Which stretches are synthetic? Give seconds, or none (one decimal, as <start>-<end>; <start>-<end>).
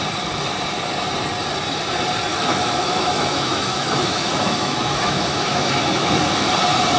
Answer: 2.3-6.5